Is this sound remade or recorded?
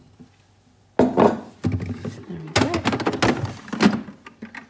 recorded